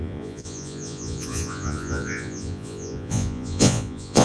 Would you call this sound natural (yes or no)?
no